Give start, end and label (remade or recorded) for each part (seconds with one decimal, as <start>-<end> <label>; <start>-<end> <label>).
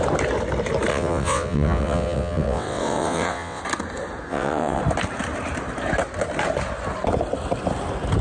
0.0-0.9 recorded; 0.9-3.6 remade; 3.6-4.3 recorded; 4.3-4.8 remade; 4.8-8.2 recorded